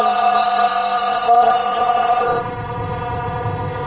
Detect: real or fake fake